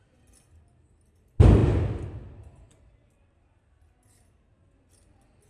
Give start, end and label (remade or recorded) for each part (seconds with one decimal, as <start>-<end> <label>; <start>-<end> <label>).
0.0-5.5 recorded